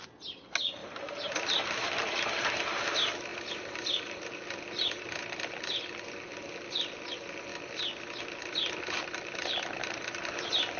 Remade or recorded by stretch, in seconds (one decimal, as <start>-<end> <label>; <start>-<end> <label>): 0.0-0.8 recorded; 0.8-1.3 remade; 1.3-3.3 recorded; 3.3-5.8 remade; 5.8-10.8 recorded